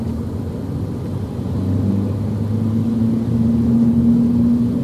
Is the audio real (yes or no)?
yes